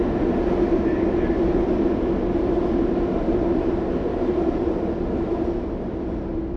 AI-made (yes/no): no